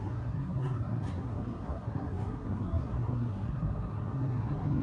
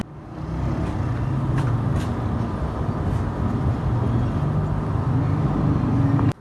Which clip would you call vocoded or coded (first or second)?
first